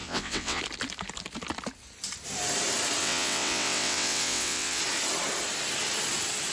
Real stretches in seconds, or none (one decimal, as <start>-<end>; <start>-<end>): 0.6-3.0; 4.8-6.5